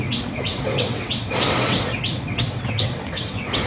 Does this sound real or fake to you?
fake